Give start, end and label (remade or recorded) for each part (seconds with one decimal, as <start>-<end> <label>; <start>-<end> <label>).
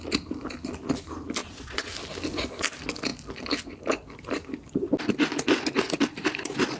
0.0-1.4 recorded; 1.4-1.9 remade; 1.9-6.8 recorded